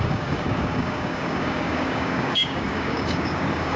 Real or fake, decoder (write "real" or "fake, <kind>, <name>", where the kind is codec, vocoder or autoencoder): fake, codec, DAC